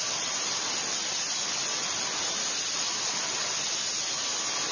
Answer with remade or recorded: recorded